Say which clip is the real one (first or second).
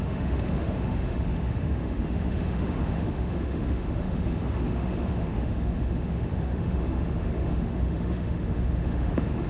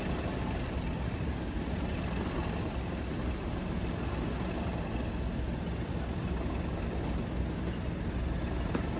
second